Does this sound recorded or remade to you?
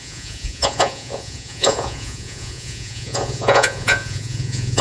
remade